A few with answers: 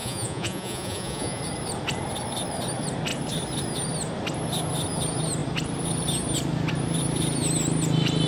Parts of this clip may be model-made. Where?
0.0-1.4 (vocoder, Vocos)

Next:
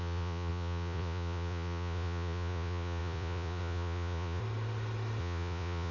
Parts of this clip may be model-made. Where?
0.0-4.4 (vocoder, Vocos); 5.2-5.9

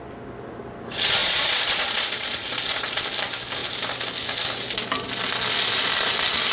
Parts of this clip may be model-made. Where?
1.2-3.0 (vocoder, Vocos)